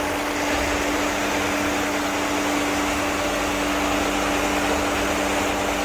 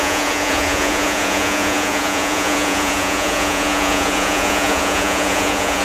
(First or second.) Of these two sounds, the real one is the first